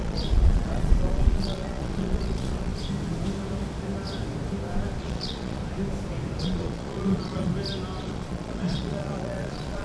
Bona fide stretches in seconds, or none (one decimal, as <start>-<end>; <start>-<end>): 2.7-5.0; 5.6-6.4; 7.5-8.0